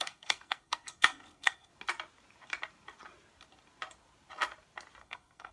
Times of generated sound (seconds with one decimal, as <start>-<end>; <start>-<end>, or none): 0.0-1.7; 5.0-5.5